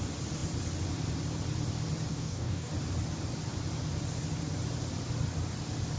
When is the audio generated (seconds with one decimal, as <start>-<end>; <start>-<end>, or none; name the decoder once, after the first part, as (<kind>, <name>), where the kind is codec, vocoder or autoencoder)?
2.1-2.7 (codec, DAC)